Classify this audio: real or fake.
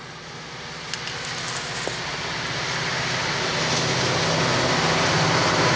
real